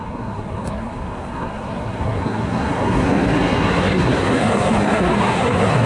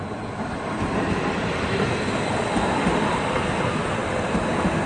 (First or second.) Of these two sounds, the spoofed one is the first